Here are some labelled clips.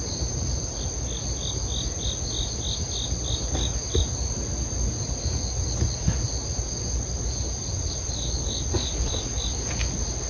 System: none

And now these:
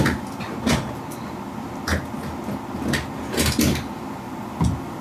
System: none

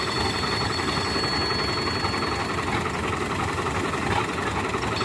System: none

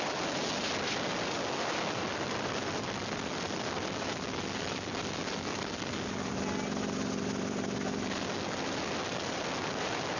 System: none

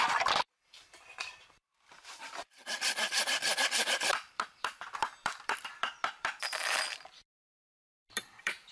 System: vocoder, BigVGAN v2